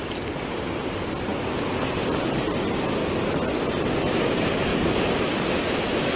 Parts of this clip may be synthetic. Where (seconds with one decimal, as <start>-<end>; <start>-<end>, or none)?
0.0-3.0; 3.7-4.7; 5.7-6.2